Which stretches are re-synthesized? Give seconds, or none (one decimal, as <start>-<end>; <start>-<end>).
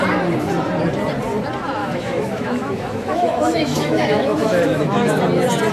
1.8-5.2